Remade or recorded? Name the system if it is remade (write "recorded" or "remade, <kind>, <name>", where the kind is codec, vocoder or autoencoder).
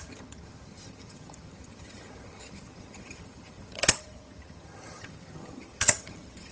remade, vocoder, HiFi-GAN